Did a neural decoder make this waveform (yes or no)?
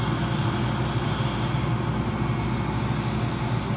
no